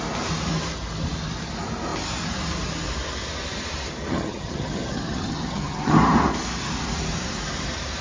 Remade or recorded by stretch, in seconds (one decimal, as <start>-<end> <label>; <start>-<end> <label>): 0.0-4.1 recorded; 4.1-5.9 remade; 5.9-8.0 recorded